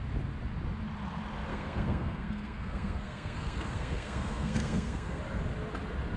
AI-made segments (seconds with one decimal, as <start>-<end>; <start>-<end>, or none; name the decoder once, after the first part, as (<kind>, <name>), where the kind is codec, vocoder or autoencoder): 1.5-5.2 (codec, SNAC)